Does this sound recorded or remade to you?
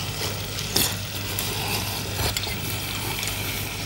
recorded